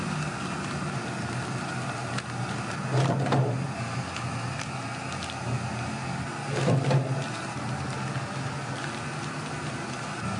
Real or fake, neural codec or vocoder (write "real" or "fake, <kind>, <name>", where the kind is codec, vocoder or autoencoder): real